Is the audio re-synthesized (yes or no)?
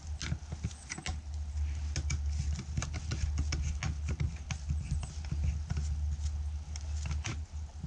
no